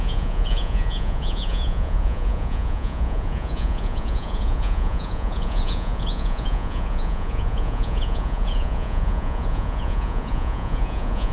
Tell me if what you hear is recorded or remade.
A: remade